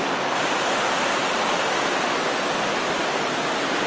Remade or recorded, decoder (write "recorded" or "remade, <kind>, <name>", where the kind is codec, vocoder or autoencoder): recorded